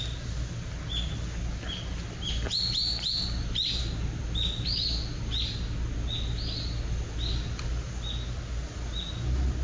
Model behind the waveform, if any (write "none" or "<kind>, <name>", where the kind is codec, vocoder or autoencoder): none